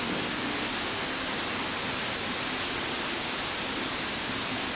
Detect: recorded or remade recorded